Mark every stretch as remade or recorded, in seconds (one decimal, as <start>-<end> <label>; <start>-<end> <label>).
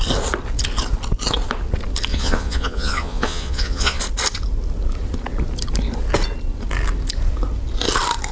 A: 0.0-2.1 recorded; 2.1-4.0 remade; 4.0-8.3 recorded